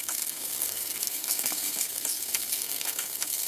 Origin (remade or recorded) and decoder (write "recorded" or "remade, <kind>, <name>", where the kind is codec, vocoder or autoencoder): remade, codec, SNAC